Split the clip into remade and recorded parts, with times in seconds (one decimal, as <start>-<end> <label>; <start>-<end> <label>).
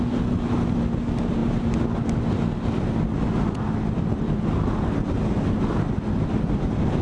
0.0-7.0 recorded